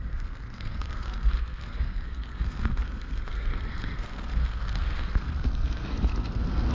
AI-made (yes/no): yes